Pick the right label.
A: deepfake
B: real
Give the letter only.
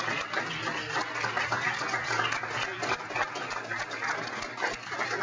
B